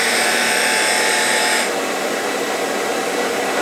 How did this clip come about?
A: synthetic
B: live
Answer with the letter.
A